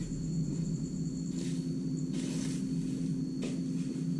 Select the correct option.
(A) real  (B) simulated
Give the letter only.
A